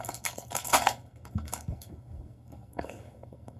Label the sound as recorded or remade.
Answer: remade